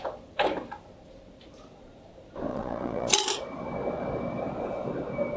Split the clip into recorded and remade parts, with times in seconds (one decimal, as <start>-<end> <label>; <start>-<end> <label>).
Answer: 0.0-2.5 recorded; 2.5-3.1 remade; 3.1-5.4 recorded